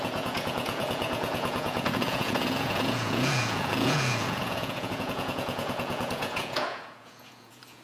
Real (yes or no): no